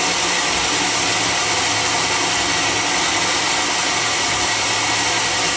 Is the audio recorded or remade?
recorded